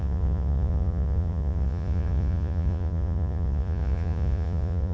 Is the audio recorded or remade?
remade